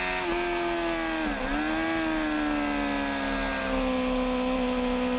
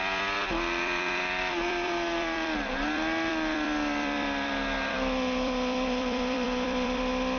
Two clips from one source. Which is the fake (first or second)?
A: second